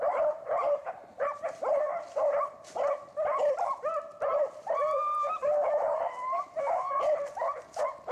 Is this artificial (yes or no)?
yes